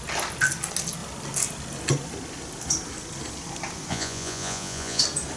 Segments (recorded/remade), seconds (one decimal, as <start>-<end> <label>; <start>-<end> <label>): 0.0-3.9 recorded; 3.9-5.0 remade; 5.0-5.4 recorded